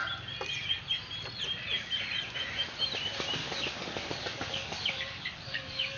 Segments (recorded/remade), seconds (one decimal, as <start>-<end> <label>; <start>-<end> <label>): 0.0-3.4 recorded; 3.4-6.0 remade